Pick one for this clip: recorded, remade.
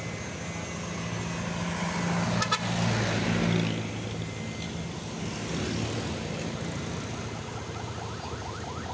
recorded